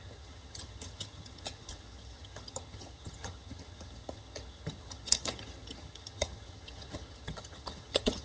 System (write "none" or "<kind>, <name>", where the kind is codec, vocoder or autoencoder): vocoder, HiFi-GAN